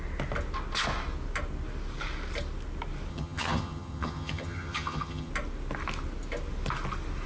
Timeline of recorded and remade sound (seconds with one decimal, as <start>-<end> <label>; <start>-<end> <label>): 0.0-3.1 recorded; 3.1-5.3 remade; 5.3-7.3 recorded